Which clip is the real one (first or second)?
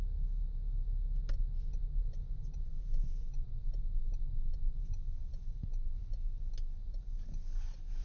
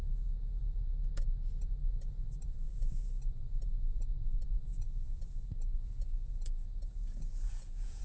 first